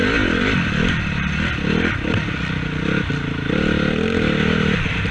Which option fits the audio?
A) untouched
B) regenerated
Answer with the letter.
A